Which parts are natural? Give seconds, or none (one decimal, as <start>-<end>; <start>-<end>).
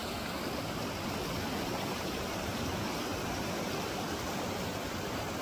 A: 2.7-5.4